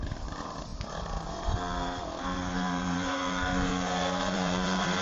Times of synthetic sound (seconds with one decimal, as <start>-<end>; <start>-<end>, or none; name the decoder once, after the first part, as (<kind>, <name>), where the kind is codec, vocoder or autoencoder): 0.0-5.0 (vocoder, BigVGAN v2)